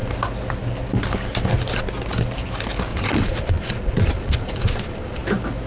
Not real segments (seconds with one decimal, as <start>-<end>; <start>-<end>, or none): 2.9-5.2